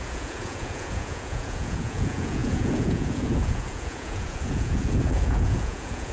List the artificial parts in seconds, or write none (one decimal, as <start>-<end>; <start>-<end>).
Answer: 0.0-6.1